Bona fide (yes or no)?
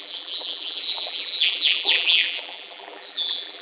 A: no